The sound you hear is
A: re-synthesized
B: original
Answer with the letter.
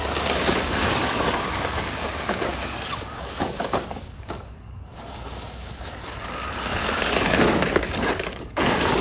A